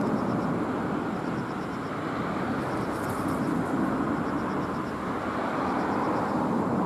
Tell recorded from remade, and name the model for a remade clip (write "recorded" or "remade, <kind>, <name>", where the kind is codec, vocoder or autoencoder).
recorded